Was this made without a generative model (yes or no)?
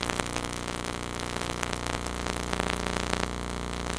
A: yes